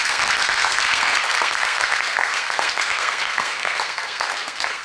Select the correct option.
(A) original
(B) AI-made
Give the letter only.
B